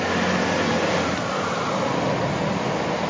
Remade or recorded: recorded